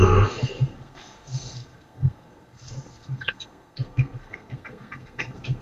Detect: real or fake fake